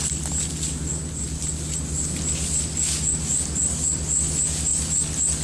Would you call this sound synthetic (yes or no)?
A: no